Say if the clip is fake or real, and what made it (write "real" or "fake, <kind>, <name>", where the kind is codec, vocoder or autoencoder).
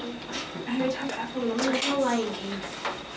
real